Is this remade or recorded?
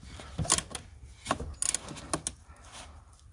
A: recorded